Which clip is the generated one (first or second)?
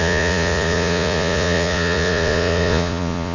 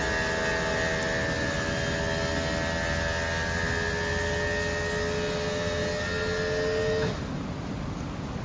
first